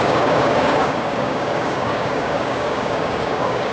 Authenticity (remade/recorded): remade